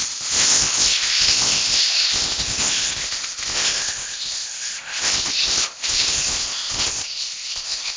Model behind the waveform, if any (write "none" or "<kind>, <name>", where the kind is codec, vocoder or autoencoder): codec, ZipCodec